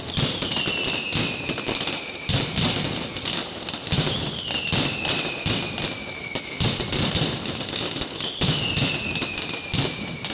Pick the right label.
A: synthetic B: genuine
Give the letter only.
B